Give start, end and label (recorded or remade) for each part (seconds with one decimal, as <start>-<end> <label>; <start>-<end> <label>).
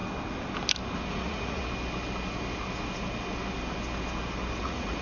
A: 0.0-1.1 recorded; 1.1-1.6 remade; 1.6-4.6 recorded; 4.6-5.0 remade